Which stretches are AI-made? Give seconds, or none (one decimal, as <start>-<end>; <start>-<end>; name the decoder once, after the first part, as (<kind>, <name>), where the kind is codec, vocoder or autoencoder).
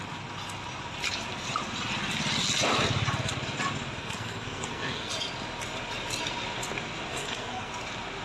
4.0-5.1 (codec, SNAC); 7.1-7.7